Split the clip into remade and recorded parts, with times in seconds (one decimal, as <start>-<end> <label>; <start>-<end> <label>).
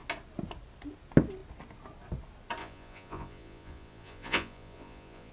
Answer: 0.0-2.6 recorded; 2.6-5.3 remade